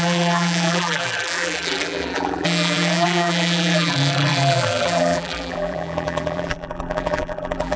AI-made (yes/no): yes